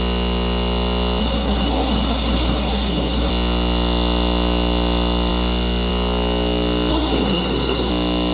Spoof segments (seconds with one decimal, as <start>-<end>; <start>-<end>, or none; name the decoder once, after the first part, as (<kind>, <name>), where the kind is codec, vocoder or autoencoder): 1.2-3.3 (codec, SNAC); 6.9-7.9